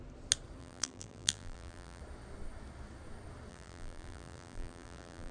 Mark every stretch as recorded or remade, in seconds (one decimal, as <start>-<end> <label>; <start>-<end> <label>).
0.0-0.6 recorded; 0.6-2.0 remade; 2.0-3.5 recorded; 3.5-5.3 remade